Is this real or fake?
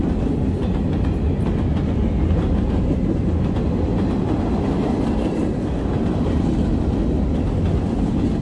real